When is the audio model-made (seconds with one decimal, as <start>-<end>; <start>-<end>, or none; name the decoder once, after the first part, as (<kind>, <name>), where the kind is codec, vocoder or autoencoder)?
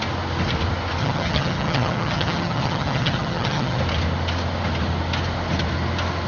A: 1.0-3.8 (vocoder, HiFi-GAN)